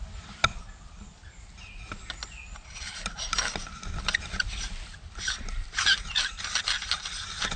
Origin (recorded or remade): recorded